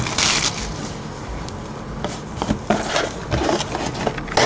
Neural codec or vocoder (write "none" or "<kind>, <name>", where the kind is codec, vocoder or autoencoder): none